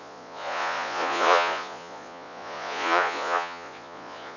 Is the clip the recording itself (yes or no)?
no